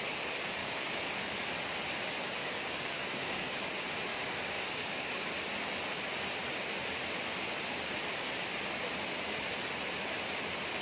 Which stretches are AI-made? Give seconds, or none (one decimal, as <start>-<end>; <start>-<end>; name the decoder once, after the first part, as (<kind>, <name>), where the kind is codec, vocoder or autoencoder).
0.6-1.2 (codec, DAC); 2.4-3.5; 4.1-5.3

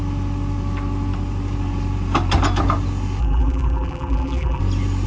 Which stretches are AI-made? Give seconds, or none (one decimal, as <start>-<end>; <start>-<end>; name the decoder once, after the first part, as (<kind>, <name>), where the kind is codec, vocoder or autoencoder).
3.2-4.6 (vocoder, BigVGAN v2)

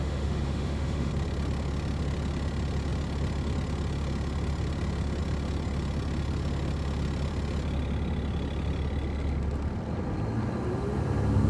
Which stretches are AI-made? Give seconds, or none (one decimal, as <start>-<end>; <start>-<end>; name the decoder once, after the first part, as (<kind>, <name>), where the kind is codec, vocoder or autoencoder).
0.0-1.1 (autoencoder, DAC-VAE)

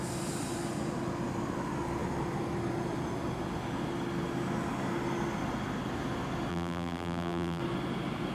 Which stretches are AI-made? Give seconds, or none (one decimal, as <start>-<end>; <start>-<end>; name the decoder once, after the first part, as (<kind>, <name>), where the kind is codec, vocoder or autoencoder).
6.5-7.6 (vocoder, BigVGAN v2)